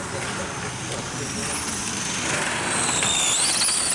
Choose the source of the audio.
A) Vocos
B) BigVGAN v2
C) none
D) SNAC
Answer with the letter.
C